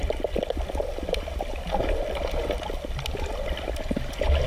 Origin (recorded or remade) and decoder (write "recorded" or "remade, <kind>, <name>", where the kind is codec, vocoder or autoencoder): recorded